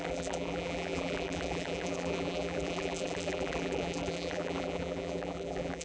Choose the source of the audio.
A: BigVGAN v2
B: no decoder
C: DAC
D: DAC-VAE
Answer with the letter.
A